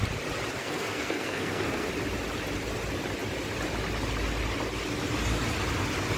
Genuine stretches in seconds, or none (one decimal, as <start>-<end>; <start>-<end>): 0.0-0.6; 1.9-6.2